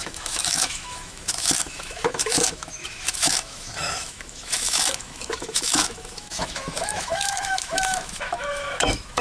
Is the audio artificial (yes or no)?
yes